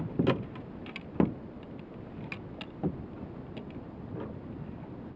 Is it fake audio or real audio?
real